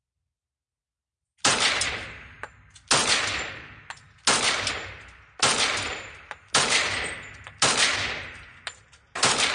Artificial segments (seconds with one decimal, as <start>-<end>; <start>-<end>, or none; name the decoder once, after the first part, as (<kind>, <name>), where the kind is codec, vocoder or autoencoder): none

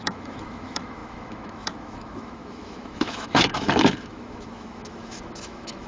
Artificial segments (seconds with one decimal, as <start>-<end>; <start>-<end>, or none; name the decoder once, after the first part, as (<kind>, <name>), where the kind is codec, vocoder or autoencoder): 0.0-5.9 (autoencoder, DAC-VAE)

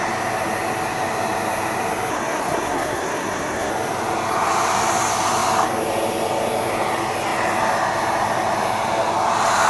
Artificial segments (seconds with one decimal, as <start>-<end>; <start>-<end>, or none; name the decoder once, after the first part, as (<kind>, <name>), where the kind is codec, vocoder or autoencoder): 2.1-3.7 (codec, SNAC)

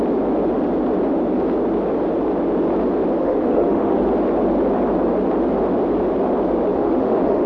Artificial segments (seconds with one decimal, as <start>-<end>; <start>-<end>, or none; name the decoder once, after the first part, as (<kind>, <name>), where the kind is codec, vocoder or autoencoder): 3.2-4.0 (autoencoder, DAC-VAE); 6.7-7.5

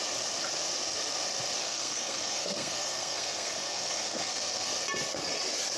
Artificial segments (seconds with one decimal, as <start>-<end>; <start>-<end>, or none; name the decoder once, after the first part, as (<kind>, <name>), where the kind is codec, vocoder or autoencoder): 1.6-4.7 (codec, SNAC)